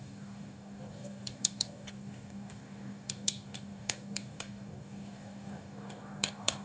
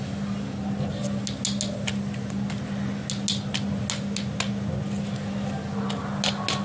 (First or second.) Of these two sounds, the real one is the second